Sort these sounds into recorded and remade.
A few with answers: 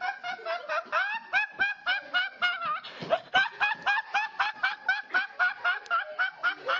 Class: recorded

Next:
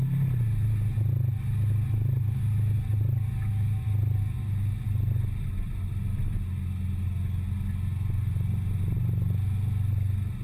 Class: recorded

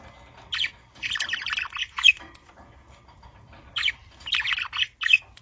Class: recorded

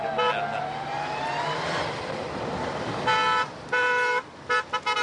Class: recorded